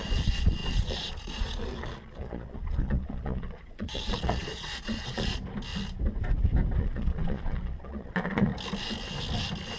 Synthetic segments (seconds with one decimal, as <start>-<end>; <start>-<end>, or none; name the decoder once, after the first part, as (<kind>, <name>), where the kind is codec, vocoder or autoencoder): 0.0-5.3 (vocoder, Vocos); 6.8-8.5